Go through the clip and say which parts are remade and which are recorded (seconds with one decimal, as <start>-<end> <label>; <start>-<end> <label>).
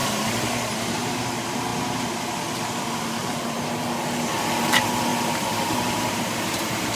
0.0-1.1 remade; 1.1-5.1 recorded; 5.1-7.0 remade